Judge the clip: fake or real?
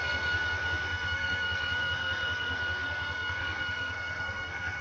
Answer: fake